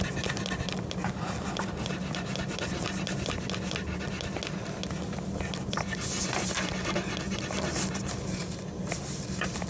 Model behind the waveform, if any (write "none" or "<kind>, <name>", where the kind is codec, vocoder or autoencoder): none